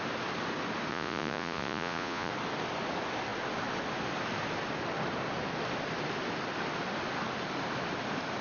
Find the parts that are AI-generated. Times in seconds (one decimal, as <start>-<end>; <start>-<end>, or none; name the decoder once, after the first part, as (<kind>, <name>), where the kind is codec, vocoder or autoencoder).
0.9-2.3 (vocoder, Vocos)